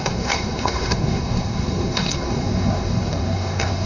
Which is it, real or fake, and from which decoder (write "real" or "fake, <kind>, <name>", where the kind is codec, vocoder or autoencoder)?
fake, codec, SNAC